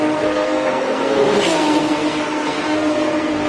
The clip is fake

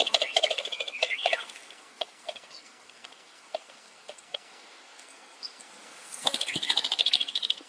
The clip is fake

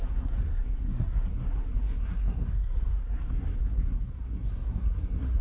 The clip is fake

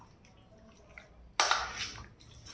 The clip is real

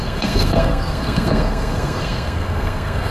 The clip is fake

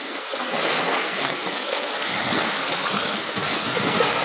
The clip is fake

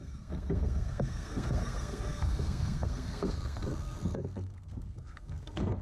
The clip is fake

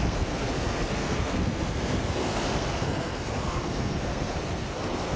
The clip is fake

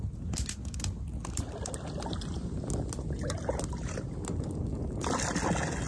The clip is real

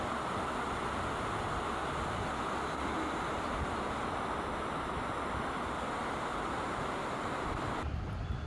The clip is real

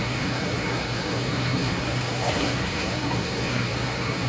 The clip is fake